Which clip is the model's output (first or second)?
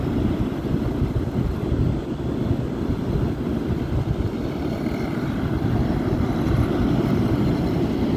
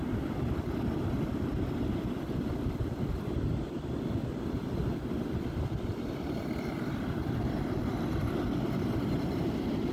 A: second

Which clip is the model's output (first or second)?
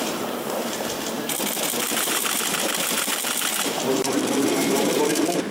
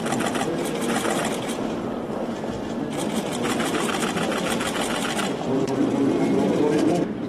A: first